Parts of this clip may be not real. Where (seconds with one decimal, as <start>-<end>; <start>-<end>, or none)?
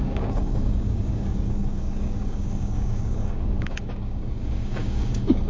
0.0-5.5